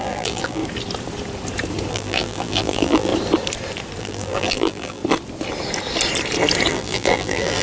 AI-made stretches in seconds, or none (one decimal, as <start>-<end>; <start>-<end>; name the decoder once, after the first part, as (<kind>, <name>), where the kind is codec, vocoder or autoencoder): 0.0-0.6 (vocoder, BigVGAN v2); 1.9-3.1; 4.0-5.0; 6.7-7.6